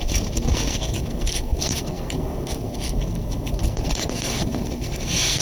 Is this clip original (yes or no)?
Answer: no